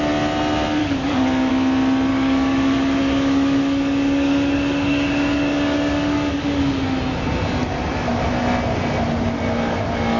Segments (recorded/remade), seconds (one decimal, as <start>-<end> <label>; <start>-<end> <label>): 0.0-0.8 recorded; 0.8-1.5 remade; 1.5-2.1 recorded; 2.1-6.7 remade; 6.7-10.2 recorded